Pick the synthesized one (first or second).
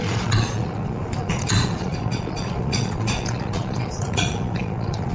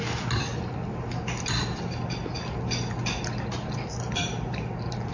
first